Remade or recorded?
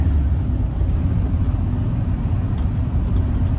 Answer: recorded